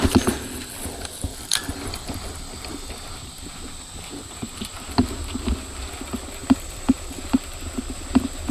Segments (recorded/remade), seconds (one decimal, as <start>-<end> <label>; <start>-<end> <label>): 0.0-1.3 recorded; 1.3-2.9 remade; 2.9-6.4 recorded; 6.4-7.2 remade; 7.2-8.5 recorded

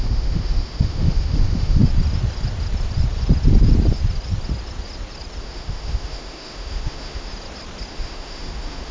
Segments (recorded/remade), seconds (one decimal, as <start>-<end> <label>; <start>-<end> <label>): 0.0-1.8 remade; 1.8-5.4 recorded; 5.4-7.3 remade; 7.3-7.9 recorded; 7.9-8.9 remade

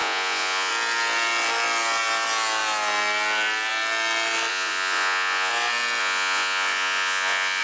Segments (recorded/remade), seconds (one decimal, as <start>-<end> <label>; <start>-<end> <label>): 0.0-0.7 remade; 0.7-4.5 recorded; 4.5-5.5 remade; 5.5-6.0 recorded; 6.0-7.6 remade

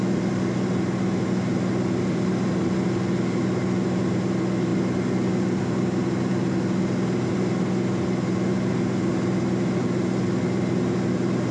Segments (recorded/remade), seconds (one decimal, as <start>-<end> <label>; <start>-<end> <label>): 0.0-11.5 recorded

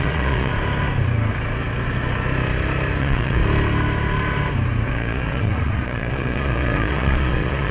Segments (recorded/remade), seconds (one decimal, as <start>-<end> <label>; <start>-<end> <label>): 0.0-0.5 remade; 0.5-3.0 recorded; 3.0-3.4 remade; 3.4-4.9 recorded; 4.9-7.7 remade

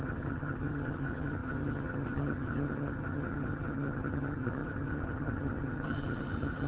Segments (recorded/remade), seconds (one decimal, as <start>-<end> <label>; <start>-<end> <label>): 0.0-6.7 remade